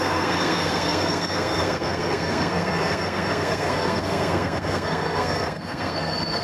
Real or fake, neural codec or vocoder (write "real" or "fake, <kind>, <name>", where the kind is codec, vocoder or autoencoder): fake, codec, SNAC